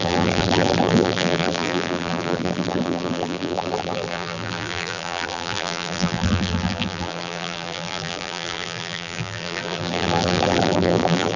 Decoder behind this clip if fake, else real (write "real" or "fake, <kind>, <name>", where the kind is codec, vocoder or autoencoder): fake, vocoder, BigVGAN v2